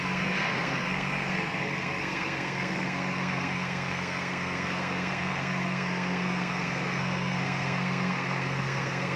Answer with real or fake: fake